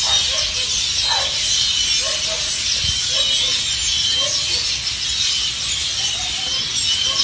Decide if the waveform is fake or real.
real